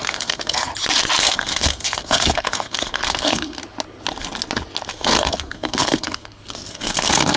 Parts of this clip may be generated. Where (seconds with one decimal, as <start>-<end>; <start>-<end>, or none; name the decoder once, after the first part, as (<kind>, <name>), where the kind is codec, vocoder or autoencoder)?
0.0-0.7 (codec, SNAC); 1.2-3.6; 4.9-7.4